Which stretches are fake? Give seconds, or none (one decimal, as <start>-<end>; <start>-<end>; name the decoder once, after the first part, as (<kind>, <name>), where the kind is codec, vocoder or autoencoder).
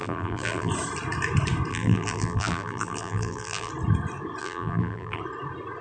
0.0-0.7 (vocoder, BigVGAN v2); 1.7-3.7; 4.4-5.2